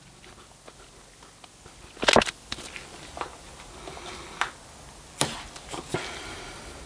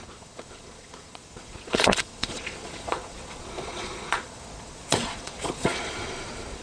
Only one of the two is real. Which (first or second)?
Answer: first